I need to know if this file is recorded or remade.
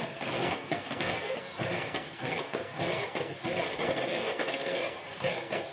remade